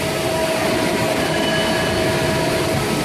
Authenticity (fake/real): real